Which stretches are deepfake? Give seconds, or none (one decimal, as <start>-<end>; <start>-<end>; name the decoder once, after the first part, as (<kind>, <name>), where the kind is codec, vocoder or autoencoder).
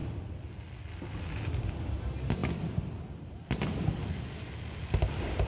none